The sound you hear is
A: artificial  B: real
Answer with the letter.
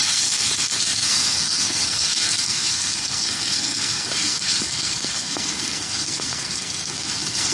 A